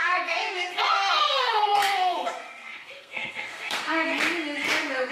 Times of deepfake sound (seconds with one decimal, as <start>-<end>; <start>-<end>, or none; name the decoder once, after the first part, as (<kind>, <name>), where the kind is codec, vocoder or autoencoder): 0.0-4.1 (codec, SNAC)